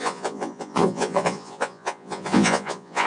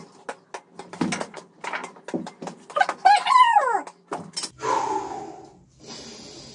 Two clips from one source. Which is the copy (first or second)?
first